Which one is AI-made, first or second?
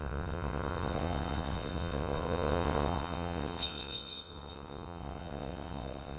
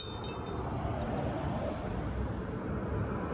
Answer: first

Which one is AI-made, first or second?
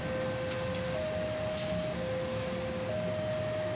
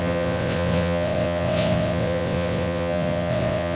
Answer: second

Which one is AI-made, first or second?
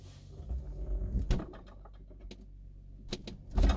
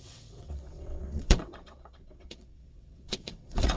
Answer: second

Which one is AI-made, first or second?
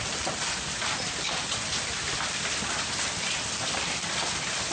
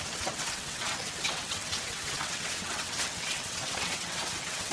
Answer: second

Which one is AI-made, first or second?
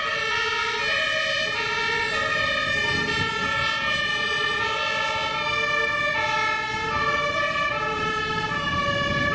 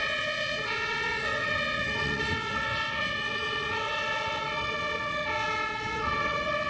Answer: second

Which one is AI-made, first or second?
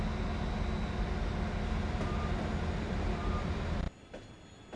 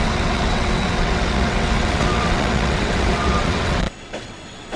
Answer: second